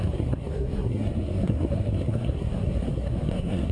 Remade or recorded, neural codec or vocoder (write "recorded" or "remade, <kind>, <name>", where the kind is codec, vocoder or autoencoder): remade, codec, SNAC